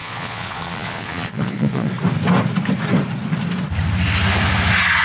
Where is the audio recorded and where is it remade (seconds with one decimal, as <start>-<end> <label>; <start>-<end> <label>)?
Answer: 0.0-1.9 remade; 1.9-5.0 recorded